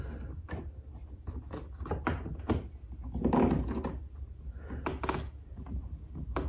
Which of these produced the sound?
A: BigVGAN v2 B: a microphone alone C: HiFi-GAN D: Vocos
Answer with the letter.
B